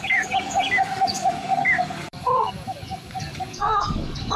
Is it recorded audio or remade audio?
remade